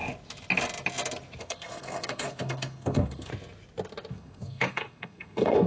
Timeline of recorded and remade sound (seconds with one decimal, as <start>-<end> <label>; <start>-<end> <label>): 0.0-1.4 recorded; 1.4-3.3 remade; 3.3-4.1 recorded; 4.1-5.7 remade